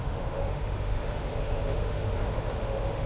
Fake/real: fake